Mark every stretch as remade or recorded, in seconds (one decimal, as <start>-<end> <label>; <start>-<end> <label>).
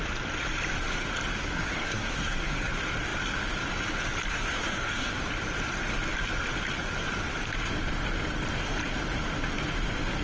0.0-1.4 recorded; 1.4-2.7 remade; 2.7-4.3 recorded; 4.3-5.1 remade; 5.1-10.2 recorded